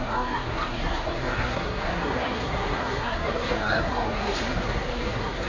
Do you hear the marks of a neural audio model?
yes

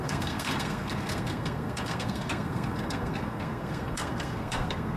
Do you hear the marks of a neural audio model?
yes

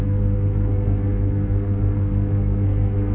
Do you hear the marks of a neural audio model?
yes